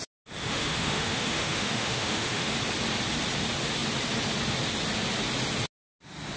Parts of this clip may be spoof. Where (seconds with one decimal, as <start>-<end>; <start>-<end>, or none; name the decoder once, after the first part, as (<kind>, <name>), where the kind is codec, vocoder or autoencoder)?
0.4-2.5 (autoencoder, DAC-VAE)